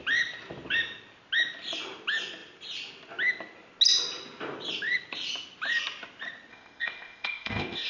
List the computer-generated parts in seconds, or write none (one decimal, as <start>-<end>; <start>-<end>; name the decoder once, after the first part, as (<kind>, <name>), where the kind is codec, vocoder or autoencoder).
6.5-7.9 (codec, ZipCodec)